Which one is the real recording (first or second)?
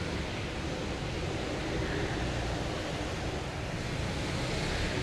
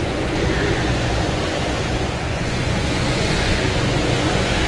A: first